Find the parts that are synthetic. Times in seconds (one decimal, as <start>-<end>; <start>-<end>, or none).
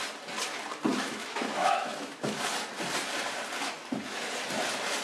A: 0.9-2.4